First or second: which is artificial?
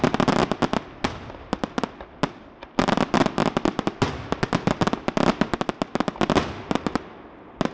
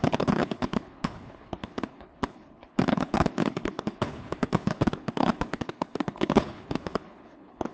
second